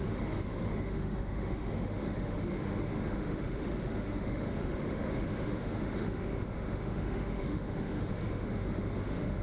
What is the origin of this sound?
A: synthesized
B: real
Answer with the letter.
A